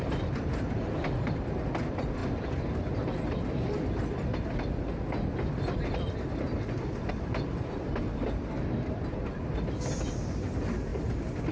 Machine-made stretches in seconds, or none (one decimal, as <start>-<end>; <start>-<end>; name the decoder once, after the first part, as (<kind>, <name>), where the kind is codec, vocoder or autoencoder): none